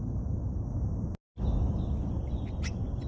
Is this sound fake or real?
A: real